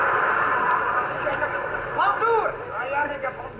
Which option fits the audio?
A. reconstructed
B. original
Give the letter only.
B